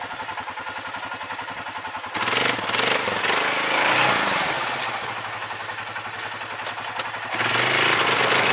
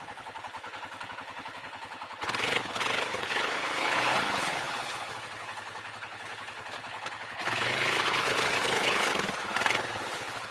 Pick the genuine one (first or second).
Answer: first